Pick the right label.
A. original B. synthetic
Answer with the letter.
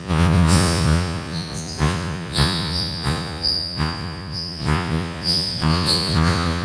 B